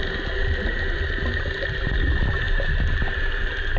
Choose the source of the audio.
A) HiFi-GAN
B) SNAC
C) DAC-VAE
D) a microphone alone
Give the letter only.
D